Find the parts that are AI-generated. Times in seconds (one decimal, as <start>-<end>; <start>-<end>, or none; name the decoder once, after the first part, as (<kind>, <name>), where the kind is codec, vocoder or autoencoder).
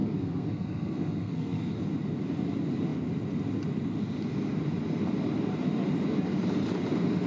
0.0-1.7 (codec, SNAC)